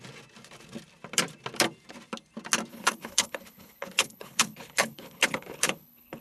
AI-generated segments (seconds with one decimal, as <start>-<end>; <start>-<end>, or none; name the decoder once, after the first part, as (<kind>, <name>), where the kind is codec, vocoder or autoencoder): 2.7-6.2 (codec, HILCodec)